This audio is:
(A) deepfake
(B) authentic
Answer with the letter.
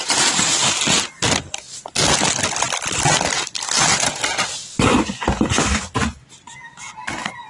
B